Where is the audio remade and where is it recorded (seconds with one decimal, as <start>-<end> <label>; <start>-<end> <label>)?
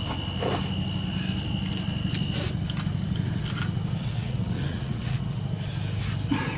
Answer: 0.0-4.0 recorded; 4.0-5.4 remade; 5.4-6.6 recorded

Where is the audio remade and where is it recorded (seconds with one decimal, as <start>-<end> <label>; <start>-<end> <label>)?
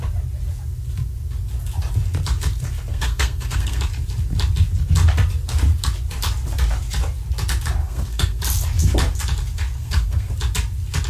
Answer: 0.0-2.9 recorded; 2.9-3.8 remade; 3.8-7.8 recorded; 7.8-8.4 remade; 8.4-9.8 recorded; 9.8-10.3 remade; 10.3-11.1 recorded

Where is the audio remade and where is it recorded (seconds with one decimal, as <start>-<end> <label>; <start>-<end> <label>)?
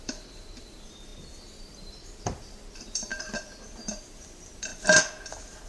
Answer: 0.0-4.7 remade; 4.7-5.3 recorded; 5.3-5.7 remade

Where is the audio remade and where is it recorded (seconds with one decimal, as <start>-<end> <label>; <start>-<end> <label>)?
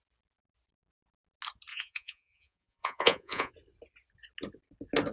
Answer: 0.0-1.7 recorded; 1.7-3.5 remade; 3.5-5.1 recorded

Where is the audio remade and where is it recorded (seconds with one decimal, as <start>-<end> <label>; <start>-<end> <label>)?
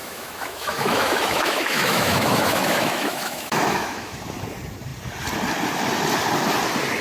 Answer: 0.0-4.2 remade; 4.2-7.0 recorded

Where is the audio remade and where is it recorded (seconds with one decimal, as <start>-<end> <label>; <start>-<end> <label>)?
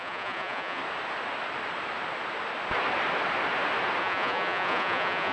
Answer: 0.0-0.8 remade; 0.8-4.0 recorded; 4.0-5.3 remade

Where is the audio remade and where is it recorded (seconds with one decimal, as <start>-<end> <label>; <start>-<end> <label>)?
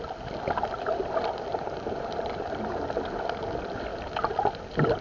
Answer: 0.0-1.5 recorded; 1.5-2.8 remade; 2.8-5.0 recorded